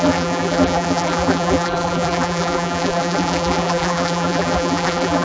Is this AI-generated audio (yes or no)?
yes